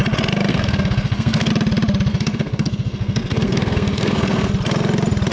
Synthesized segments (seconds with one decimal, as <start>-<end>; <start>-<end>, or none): 0.5-1.5; 2.1-4.5